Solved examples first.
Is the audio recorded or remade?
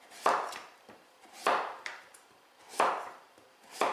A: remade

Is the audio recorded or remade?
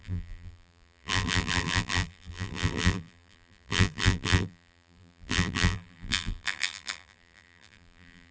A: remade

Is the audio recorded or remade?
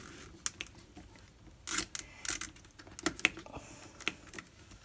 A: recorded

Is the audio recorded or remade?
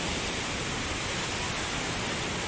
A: recorded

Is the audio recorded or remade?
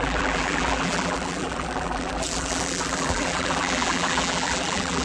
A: remade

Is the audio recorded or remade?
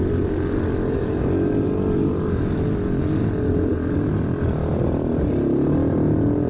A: recorded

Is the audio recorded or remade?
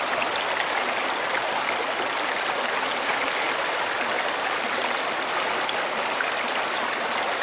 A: recorded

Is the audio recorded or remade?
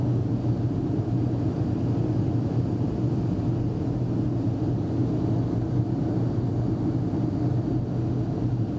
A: recorded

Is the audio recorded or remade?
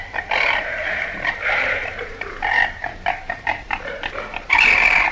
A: remade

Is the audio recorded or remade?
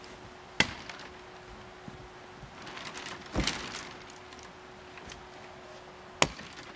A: recorded